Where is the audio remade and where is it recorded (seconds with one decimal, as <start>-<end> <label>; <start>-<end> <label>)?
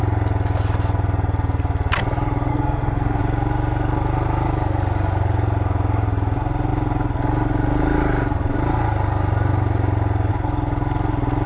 0.0-2.5 recorded; 2.5-3.2 remade; 3.2-11.5 recorded